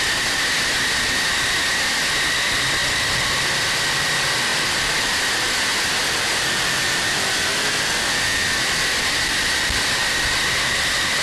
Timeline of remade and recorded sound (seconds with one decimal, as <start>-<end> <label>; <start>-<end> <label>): 0.0-11.2 recorded

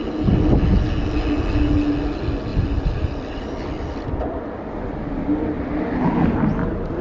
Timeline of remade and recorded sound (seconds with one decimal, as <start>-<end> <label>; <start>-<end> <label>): 0.0-2.5 recorded; 2.5-6.0 remade; 6.0-7.0 recorded

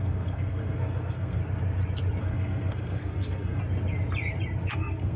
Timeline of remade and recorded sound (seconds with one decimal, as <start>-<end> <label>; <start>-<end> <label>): 0.0-1.4 remade; 1.4-2.2 recorded; 2.2-3.6 remade; 3.6-4.7 recorded; 4.7-5.2 remade